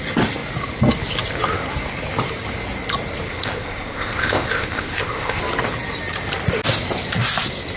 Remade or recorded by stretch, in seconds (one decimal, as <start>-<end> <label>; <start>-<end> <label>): 0.0-3.3 recorded; 3.3-5.4 remade; 5.4-7.8 recorded